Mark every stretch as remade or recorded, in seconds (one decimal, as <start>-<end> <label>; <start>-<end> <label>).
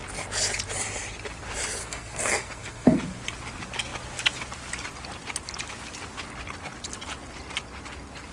0.0-1.8 recorded; 1.8-3.0 remade; 3.0-8.3 recorded